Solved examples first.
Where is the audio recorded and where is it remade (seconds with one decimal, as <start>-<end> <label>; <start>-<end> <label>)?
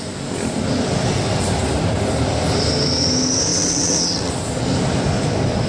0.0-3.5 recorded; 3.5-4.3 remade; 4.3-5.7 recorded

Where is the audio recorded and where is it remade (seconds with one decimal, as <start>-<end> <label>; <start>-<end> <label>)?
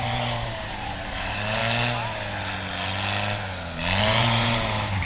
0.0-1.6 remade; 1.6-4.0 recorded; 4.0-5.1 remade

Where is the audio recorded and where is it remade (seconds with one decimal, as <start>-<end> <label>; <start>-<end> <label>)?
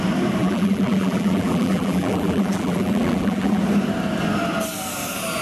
0.0-0.4 recorded; 0.4-3.6 remade; 3.6-5.4 recorded